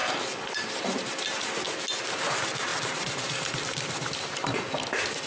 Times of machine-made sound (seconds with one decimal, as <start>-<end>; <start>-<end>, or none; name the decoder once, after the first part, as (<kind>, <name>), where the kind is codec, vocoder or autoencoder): 0.0-1.0 (vocoder, BigVGAN v2); 2.7-4.1